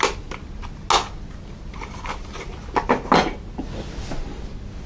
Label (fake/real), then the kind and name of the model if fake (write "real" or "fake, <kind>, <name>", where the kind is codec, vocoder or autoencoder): real